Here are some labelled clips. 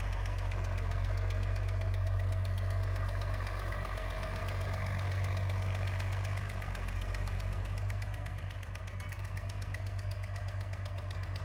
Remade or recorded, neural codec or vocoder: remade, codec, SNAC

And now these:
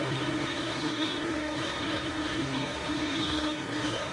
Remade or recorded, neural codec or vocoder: remade, codec, SNAC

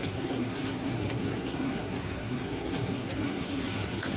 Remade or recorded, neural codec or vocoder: remade, codec, SNAC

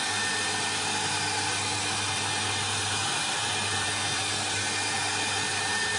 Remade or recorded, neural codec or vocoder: recorded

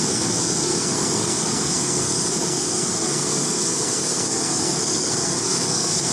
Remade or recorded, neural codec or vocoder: remade, codec, SNAC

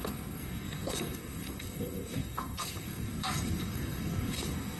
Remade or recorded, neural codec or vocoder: remade, codec, SNAC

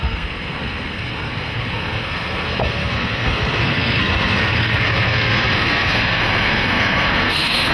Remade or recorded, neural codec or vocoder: remade, codec, SNAC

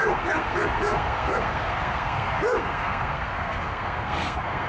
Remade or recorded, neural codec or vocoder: remade, codec, SNAC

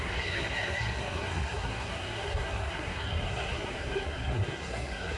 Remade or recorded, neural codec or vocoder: remade, codec, SNAC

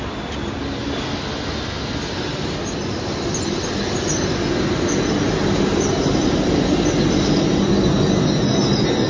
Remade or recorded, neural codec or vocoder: recorded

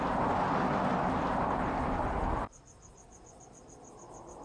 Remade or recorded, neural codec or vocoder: recorded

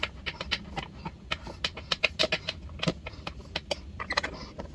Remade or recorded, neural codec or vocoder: recorded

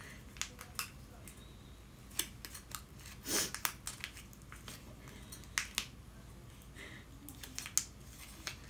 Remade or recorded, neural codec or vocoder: recorded